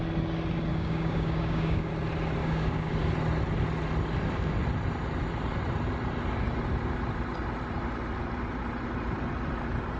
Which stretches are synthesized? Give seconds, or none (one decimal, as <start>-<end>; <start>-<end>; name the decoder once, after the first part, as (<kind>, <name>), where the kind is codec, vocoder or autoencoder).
0.7-1.9 (codec, DAC); 2.4-2.9